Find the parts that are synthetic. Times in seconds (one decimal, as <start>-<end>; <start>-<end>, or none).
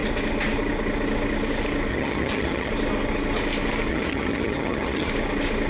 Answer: 1.9-2.7; 3.9-5.1